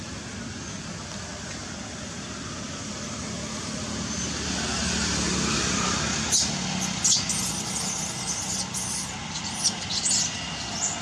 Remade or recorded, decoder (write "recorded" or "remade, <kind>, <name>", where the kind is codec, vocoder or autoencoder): recorded